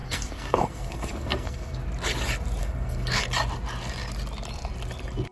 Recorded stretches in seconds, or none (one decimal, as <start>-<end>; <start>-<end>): 1.8-2.6; 3.2-5.3